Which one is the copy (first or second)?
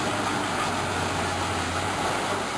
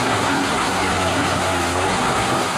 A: second